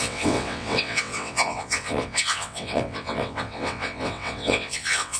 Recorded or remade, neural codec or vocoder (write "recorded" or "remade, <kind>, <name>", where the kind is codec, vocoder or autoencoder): remade, vocoder, WaveNeXt